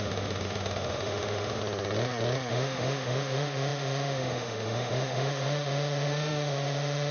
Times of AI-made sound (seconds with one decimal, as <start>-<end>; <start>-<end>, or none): 0.0-1.6; 2.5-7.1